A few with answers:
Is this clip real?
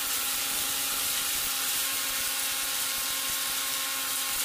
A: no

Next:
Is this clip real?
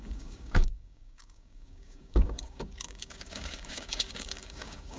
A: no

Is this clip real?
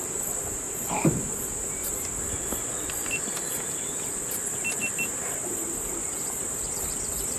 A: yes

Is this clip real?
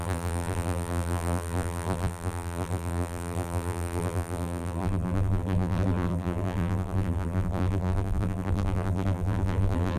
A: no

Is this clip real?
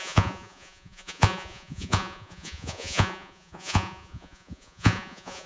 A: no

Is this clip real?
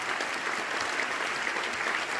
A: yes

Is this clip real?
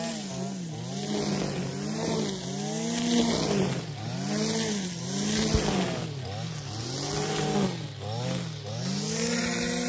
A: yes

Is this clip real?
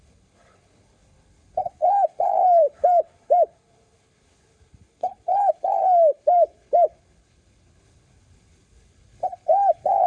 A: no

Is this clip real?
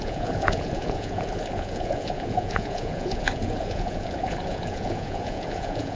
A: no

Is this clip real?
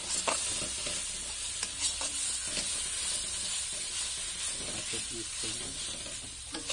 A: yes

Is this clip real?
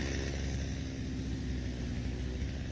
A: yes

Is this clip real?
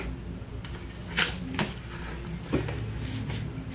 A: yes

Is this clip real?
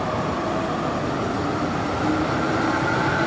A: yes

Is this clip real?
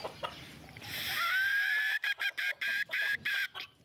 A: no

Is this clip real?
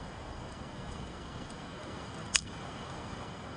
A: no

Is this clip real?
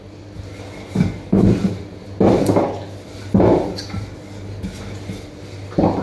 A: yes